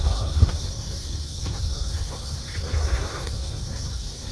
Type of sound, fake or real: fake